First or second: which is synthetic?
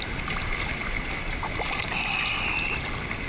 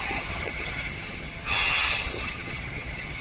second